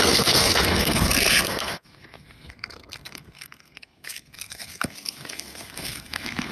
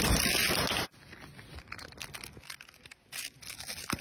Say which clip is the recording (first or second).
second